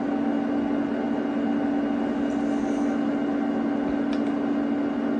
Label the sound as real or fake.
real